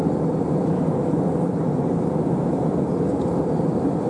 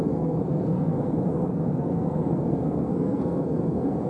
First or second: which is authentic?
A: first